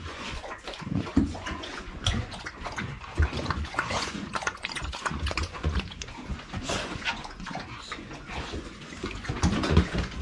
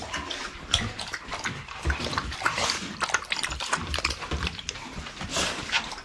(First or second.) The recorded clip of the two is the second